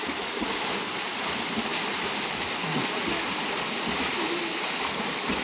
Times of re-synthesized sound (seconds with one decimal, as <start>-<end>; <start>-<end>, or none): none